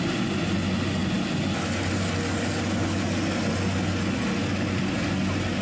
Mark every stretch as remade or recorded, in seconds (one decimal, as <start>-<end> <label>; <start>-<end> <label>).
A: 0.0-5.6 recorded